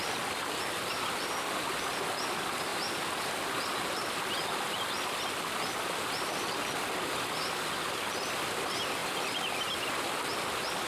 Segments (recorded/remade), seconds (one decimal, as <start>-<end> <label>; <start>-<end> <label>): 0.0-10.9 recorded